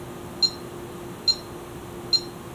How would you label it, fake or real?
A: real